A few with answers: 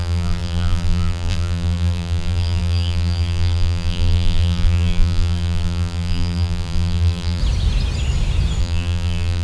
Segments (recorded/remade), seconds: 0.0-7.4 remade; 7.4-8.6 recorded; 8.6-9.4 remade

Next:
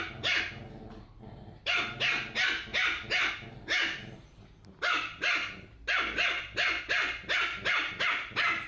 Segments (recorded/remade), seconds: 0.0-8.7 recorded

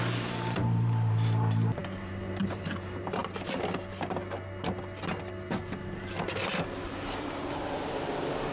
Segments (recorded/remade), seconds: 0.0-3.2 remade; 3.2-6.5 recorded; 6.5-8.5 remade

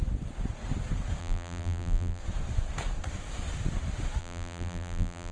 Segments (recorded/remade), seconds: 0.0-1.2 recorded; 1.2-2.2 remade; 2.2-4.2 recorded; 4.2-5.3 remade

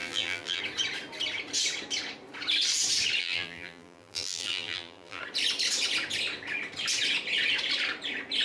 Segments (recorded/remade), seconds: 0.0-0.6 remade; 0.6-3.2 recorded; 3.2-5.2 remade; 5.2-8.4 recorded